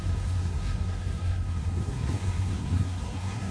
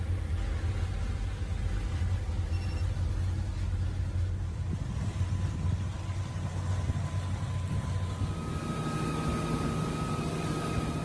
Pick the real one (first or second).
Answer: second